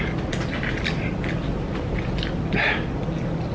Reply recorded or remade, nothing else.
recorded